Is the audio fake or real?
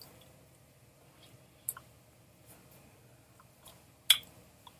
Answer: real